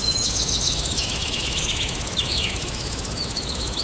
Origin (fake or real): fake